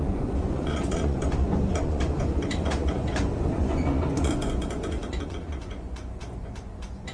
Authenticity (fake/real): fake